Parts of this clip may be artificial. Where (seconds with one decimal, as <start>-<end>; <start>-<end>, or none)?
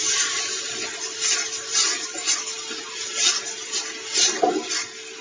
0.0-0.6; 1.7-2.4; 3.1-3.9